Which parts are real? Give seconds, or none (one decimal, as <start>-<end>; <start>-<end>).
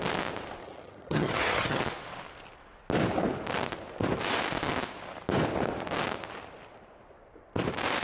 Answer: 0.0-0.6; 1.8-8.0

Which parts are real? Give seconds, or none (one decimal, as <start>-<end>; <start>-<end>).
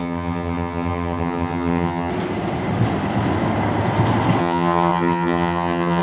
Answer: 2.1-4.4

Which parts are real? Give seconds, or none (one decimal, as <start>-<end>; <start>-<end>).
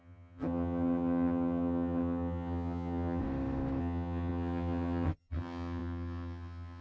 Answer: 3.2-3.8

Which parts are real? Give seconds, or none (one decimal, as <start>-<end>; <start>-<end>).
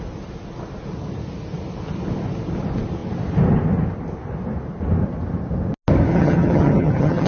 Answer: 0.0-6.1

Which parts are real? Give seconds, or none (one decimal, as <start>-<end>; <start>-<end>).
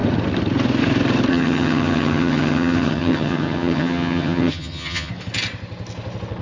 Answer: 0.0-1.3; 5.1-6.4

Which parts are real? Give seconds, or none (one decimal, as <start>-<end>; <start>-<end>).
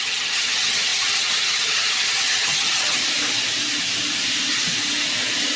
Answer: 3.0-5.6